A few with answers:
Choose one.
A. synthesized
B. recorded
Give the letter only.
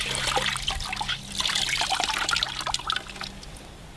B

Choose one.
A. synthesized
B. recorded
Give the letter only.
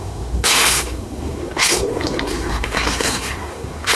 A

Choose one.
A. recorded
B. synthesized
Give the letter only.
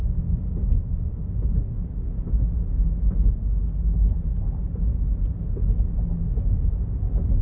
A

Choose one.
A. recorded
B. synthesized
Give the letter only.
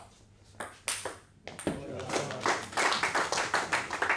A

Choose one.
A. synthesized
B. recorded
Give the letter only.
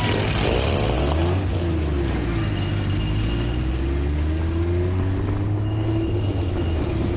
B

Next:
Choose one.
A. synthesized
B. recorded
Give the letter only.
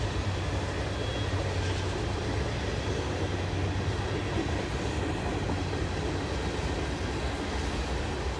B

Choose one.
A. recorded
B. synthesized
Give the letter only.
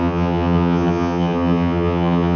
B